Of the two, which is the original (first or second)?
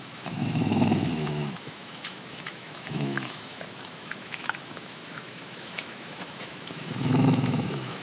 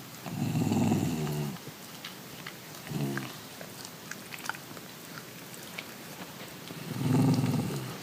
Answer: second